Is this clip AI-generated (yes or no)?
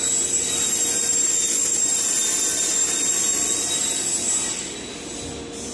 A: no